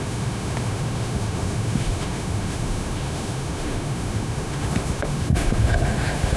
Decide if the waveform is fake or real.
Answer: fake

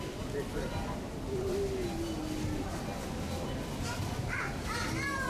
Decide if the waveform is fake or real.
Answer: real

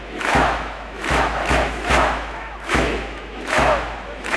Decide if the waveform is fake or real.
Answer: fake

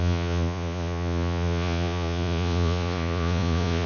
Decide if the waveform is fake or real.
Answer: fake